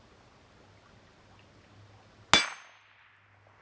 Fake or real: real